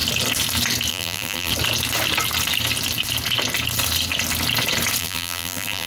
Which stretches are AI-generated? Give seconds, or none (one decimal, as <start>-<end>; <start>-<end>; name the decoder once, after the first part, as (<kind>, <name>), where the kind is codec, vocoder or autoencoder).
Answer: 0.9-1.5 (vocoder, BigVGAN v2); 5.0-5.9